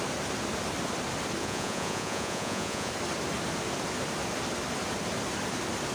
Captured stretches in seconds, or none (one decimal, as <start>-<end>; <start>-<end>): 0.0-1.4; 2.9-5.9